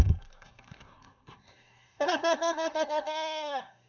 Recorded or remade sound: remade